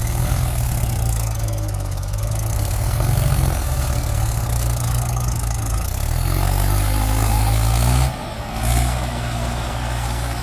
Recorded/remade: remade